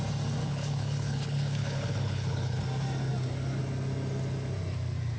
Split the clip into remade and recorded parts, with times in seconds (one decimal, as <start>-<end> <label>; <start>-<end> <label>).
0.0-0.4 recorded; 0.4-2.6 remade; 2.6-5.2 recorded